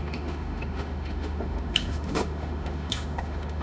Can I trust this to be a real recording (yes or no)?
no